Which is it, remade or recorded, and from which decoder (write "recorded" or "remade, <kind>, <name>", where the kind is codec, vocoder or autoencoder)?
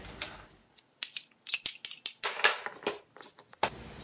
recorded